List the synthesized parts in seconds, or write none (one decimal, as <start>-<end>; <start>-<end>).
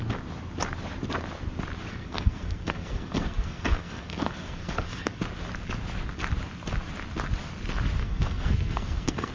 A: 1.9-5.2; 8.0-9.3